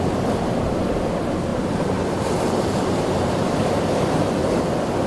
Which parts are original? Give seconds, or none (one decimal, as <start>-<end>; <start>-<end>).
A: 0.0-1.5; 4.6-5.1